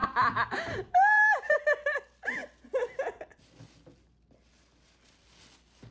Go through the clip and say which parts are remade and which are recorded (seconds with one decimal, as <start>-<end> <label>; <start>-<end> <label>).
0.0-1.6 remade; 1.6-5.9 recorded